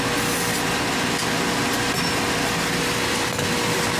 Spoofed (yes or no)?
no